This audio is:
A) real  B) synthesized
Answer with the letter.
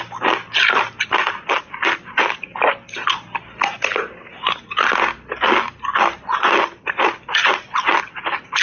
A